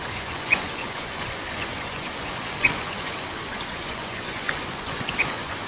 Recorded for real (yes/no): no